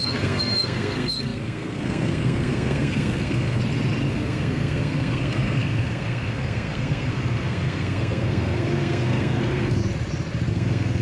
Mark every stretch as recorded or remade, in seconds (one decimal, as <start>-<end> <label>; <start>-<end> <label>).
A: 0.0-3.6 remade; 3.6-4.1 recorded; 4.1-9.8 remade; 9.8-10.5 recorded; 10.5-11.0 remade